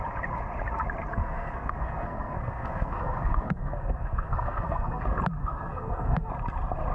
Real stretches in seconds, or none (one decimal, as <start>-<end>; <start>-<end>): 0.0-1.1; 5.0-5.4; 6.3-6.9